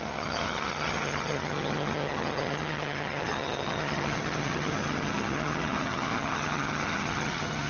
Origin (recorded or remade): remade